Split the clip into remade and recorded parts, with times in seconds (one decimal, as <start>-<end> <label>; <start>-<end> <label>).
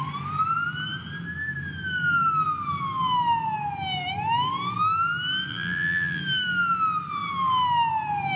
0.0-5.5 recorded; 5.5-6.2 remade; 6.2-8.4 recorded